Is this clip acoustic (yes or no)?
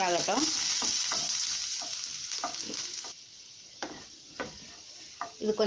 yes